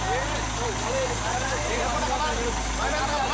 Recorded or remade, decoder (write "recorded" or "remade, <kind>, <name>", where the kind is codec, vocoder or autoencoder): recorded